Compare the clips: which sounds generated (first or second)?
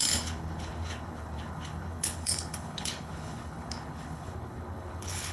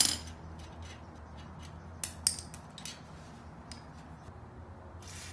first